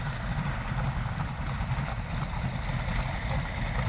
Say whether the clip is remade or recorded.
recorded